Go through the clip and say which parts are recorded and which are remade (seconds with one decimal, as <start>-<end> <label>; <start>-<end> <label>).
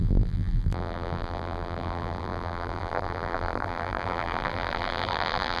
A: 0.0-5.6 remade